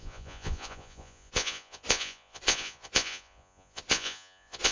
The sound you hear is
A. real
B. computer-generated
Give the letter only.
B